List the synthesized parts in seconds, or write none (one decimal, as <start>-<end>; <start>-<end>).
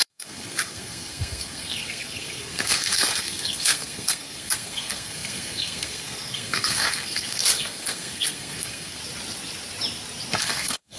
0.0-9.0; 10.4-11.0